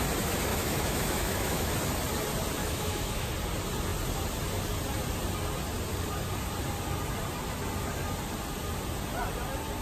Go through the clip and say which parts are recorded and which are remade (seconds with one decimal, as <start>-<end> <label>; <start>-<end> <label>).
0.0-0.5 recorded; 0.5-1.7 remade; 1.7-2.6 recorded; 2.6-3.3 remade; 3.3-9.8 recorded